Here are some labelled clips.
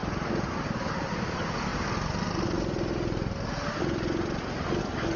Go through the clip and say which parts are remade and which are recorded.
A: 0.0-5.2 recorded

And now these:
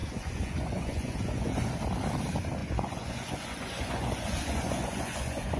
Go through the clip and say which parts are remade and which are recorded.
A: 0.0-1.7 remade; 1.7-2.6 recorded; 2.6-5.6 remade

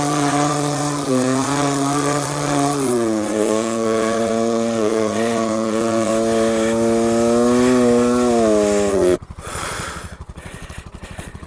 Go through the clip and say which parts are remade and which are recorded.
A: 0.0-6.1 remade; 6.1-8.9 recorded; 8.9-11.5 remade

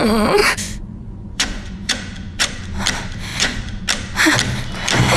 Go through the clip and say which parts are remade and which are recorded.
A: 0.0-0.4 recorded; 0.4-2.6 remade; 2.6-3.3 recorded; 3.3-3.8 remade; 3.8-5.2 recorded

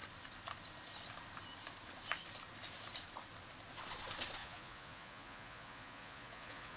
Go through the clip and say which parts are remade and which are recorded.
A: 0.0-4.4 recorded; 4.4-6.8 remade

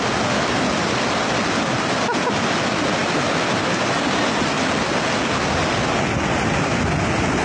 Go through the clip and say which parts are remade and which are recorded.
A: 0.0-7.4 recorded

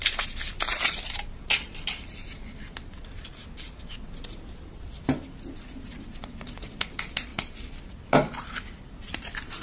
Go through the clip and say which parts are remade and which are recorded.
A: 0.0-9.6 recorded

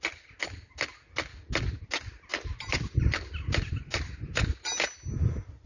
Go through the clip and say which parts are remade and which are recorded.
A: 0.0-5.7 recorded